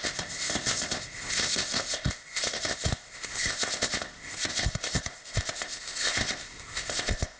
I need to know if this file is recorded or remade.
remade